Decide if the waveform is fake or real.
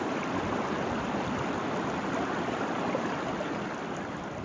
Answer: real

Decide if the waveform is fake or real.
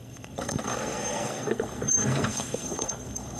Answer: fake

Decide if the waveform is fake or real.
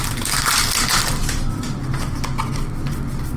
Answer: real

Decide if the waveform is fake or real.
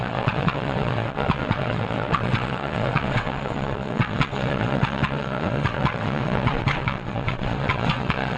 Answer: fake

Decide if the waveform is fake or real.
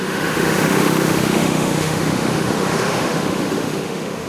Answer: fake